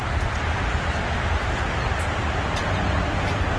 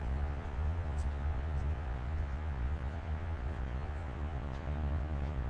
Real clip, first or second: first